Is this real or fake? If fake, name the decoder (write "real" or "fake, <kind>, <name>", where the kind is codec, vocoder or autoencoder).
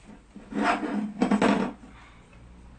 real